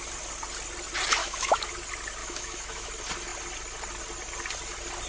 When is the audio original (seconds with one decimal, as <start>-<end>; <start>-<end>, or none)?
0.0-1.2; 1.7-2.2; 2.9-5.1

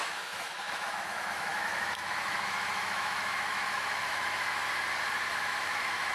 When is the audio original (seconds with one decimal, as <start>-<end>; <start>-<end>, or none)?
4.6-5.3

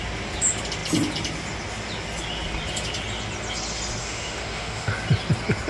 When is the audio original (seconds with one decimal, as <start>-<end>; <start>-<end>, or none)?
0.0-4.0; 4.9-5.7

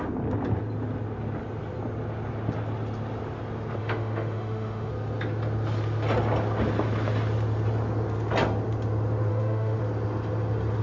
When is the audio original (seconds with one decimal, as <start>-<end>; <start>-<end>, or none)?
0.0-3.8; 4.9-9.3; 9.8-10.8

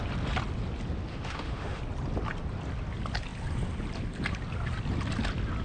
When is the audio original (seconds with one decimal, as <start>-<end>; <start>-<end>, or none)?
0.0-1.1; 1.8-5.6

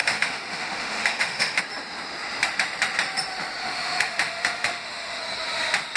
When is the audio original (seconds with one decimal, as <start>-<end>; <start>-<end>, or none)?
1.6-3.6; 5.2-6.0

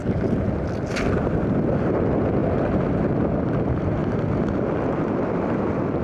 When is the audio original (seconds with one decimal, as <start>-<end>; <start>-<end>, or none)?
0.0-6.0